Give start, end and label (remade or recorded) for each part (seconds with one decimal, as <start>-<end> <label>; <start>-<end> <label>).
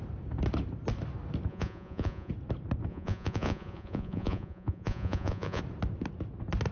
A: 0.0-1.5 recorded; 1.5-2.3 remade; 2.3-2.9 recorded; 2.9-5.6 remade; 5.6-6.7 recorded